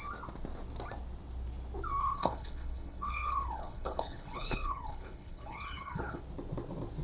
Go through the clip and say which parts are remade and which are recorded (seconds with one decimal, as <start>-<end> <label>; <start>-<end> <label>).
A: 0.0-2.0 recorded; 2.0-6.2 remade; 6.2-7.0 recorded

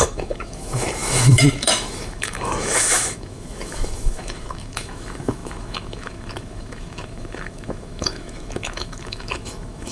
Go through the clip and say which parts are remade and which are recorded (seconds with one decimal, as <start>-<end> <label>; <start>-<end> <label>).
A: 0.0-9.9 remade

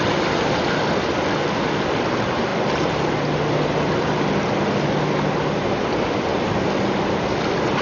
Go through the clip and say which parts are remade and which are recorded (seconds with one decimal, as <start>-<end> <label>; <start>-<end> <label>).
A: 0.0-7.8 recorded

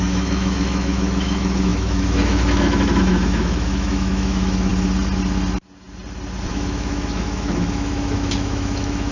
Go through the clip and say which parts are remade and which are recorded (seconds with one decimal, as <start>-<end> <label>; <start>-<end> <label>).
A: 0.0-4.7 remade; 4.7-6.5 recorded; 6.5-9.1 remade

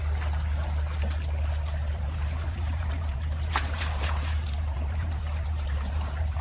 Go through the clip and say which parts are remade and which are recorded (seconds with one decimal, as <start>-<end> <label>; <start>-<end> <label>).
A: 0.0-1.9 recorded; 1.9-6.4 remade

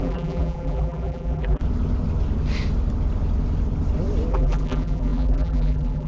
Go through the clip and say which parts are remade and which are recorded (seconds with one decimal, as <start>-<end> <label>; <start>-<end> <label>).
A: 0.0-1.6 remade; 1.6-4.3 recorded; 4.3-6.1 remade

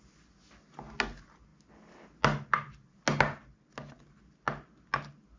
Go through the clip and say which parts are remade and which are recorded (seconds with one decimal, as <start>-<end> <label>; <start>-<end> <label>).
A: 0.0-5.4 recorded

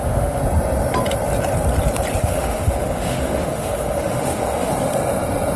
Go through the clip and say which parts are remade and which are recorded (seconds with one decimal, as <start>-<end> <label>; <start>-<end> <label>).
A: 0.0-0.4 remade; 0.4-2.2 recorded; 2.2-4.7 remade; 4.7-5.6 recorded